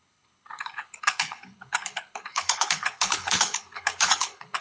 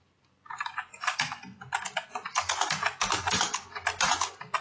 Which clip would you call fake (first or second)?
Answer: first